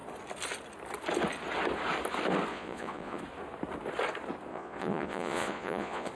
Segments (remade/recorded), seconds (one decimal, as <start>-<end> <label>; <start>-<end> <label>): 0.0-2.5 recorded; 2.5-3.2 remade; 3.2-4.5 recorded; 4.5-6.1 remade